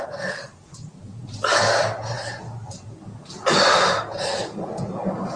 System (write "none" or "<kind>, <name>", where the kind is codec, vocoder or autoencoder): none